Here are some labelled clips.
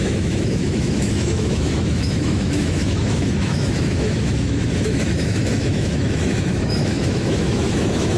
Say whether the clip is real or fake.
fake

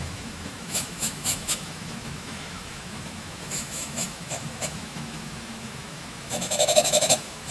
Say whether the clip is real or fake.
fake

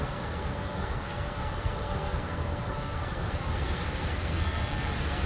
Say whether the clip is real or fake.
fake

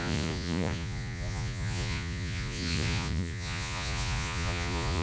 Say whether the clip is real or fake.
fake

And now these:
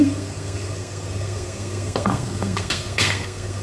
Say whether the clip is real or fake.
fake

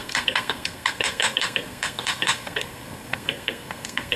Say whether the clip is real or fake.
fake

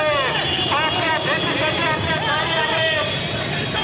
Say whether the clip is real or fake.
real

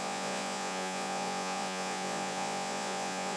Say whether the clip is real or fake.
fake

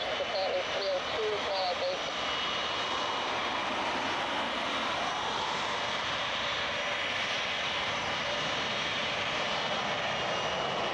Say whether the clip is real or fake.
real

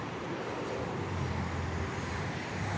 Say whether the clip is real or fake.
real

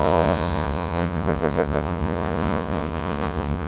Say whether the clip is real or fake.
fake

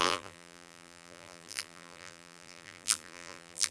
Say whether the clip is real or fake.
fake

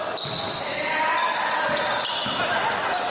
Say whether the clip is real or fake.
real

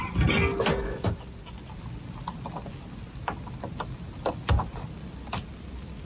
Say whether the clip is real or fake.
real